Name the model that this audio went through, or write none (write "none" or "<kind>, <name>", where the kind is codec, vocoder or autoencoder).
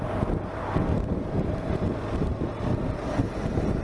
none